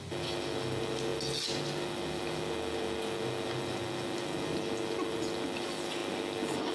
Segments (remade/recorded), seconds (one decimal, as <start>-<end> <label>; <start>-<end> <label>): 0.0-6.7 recorded